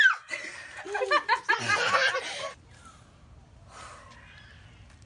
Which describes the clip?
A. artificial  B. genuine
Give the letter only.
B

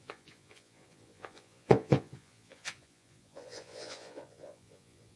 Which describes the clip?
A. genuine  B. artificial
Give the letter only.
B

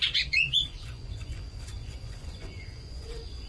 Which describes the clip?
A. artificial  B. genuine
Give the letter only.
A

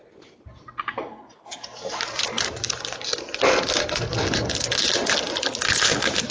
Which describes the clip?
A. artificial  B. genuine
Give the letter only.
B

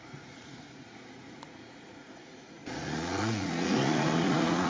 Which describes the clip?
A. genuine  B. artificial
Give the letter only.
B